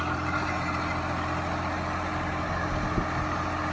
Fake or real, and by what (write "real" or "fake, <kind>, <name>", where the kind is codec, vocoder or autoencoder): real